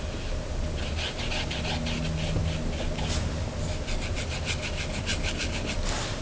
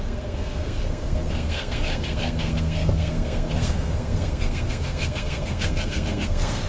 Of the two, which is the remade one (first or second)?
second